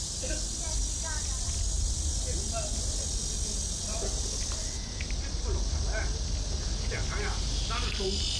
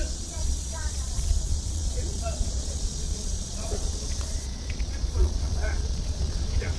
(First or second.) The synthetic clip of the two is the second